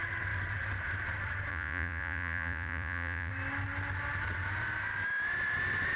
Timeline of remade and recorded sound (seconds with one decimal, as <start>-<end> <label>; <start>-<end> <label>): 0.0-1.5 recorded; 1.5-3.3 remade; 3.3-6.0 recorded